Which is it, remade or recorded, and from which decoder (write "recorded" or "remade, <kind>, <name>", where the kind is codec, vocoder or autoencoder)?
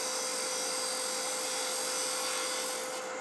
recorded